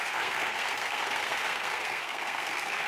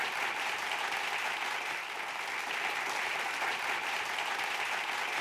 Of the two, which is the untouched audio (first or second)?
second